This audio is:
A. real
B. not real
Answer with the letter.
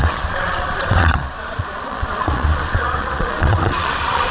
B